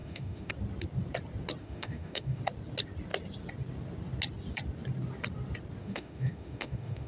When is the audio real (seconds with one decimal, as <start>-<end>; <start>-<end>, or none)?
0.5-1.6; 2.4-5.8